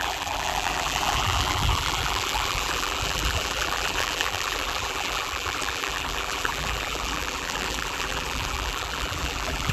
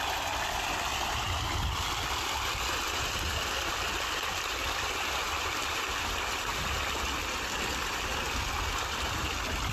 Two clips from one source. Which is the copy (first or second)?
first